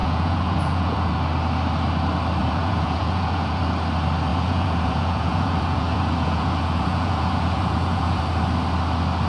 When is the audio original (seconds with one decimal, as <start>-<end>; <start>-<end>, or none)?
1.1-2.4; 3.6-4.3; 8.2-9.3

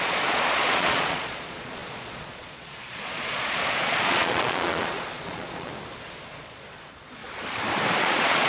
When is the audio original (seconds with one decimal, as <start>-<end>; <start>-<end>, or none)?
5.7-6.3; 7.2-8.0

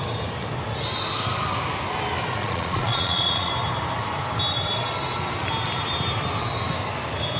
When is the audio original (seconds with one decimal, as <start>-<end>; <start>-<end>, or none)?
0.0-2.4; 3.5-7.4

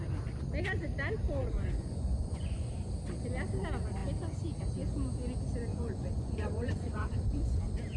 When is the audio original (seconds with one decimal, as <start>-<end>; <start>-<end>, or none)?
0.0-1.4; 2.7-5.7; 7.6-8.0

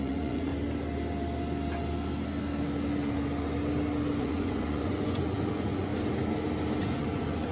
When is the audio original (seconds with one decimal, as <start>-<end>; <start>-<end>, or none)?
0.5-4.2; 5.9-6.8

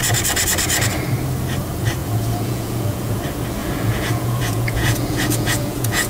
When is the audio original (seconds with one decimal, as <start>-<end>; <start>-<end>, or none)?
0.0-2.0; 3.2-3.6

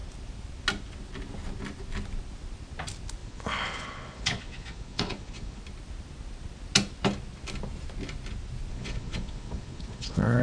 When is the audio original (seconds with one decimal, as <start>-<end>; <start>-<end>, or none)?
0.0-3.2; 5.6-8.7

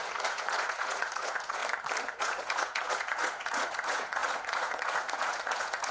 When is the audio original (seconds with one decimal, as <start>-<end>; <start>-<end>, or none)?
1.6-2.2